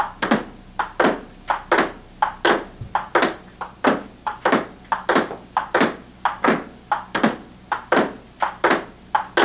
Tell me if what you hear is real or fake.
real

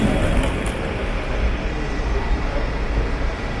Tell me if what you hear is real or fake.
real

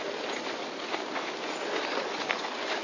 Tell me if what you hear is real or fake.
real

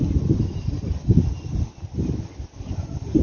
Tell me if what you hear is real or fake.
real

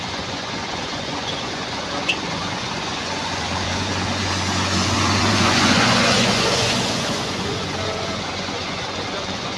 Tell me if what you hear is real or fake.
fake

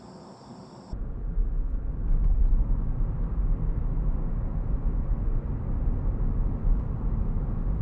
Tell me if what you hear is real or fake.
real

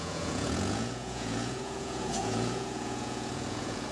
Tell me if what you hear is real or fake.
fake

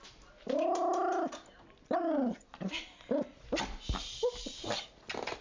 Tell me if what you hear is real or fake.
real